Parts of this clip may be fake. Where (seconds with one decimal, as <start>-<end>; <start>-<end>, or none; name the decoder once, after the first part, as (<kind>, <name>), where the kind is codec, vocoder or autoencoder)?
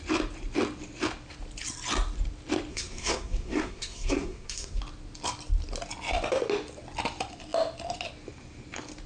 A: 2.7-4.8 (codec, SNAC)